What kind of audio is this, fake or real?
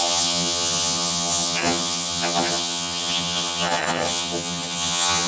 fake